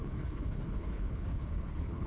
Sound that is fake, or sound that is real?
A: fake